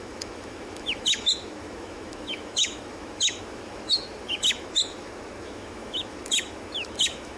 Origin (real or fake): fake